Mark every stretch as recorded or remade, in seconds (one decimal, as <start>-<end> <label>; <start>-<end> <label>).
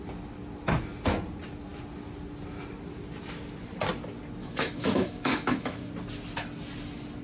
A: 0.0-4.4 recorded; 4.4-5.9 remade; 5.9-7.2 recorded